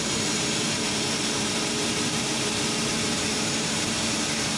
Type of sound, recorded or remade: remade